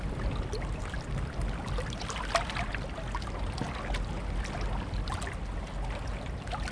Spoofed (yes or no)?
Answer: no